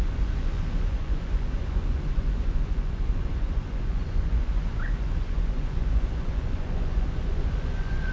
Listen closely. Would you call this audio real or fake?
fake